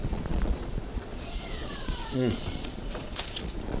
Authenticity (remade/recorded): remade